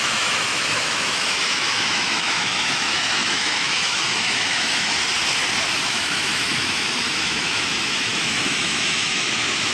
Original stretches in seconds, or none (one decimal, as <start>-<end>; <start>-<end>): 4.9-5.8